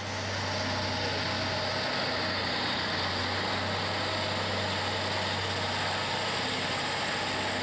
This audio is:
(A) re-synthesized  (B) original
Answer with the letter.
B